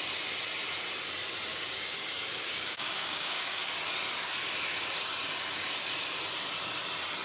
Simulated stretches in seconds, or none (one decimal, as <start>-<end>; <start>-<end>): 1.5-3.7